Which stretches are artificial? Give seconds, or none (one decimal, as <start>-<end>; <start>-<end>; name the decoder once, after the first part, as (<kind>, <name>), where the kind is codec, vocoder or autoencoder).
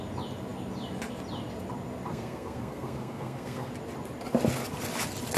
2.1-3.7 (codec, SNAC)